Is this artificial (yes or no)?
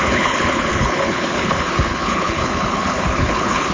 yes